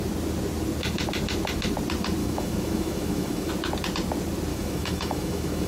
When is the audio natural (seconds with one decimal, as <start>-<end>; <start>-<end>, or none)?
0.0-2.2; 3.5-4.5